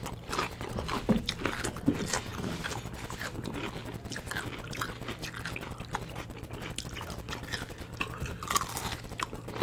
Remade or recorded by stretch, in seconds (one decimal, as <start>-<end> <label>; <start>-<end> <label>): 0.0-9.6 recorded